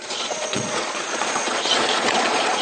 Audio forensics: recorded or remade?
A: remade